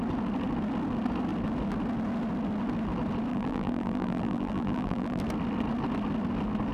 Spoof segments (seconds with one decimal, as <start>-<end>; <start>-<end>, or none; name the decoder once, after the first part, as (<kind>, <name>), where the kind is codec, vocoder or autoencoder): 3.3-5.2 (vocoder, BigVGAN v2)